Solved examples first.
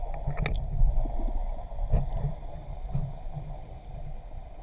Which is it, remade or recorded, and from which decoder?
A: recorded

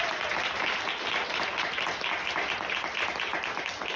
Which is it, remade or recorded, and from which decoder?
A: recorded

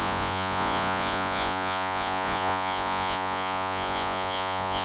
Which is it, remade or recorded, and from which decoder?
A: remade, vocoder, Vocos